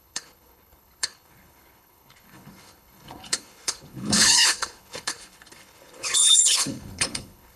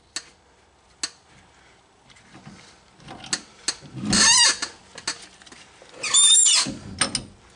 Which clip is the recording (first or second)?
second